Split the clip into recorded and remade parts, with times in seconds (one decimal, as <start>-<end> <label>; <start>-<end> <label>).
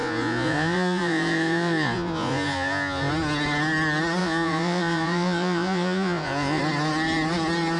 0.0-3.1 remade; 3.1-4.2 recorded; 4.2-6.6 remade; 6.6-7.8 recorded